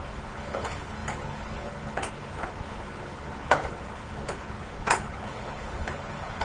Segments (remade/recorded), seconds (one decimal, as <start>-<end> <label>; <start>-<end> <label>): 0.0-6.4 remade